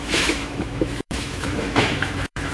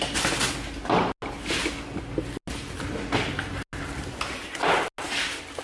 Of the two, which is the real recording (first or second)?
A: second